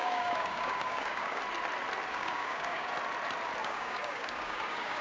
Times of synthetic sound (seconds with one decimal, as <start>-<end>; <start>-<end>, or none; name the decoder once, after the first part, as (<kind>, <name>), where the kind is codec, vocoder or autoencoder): 0.0-1.4 (codec, DAC); 2.1-2.9; 3.6-5.0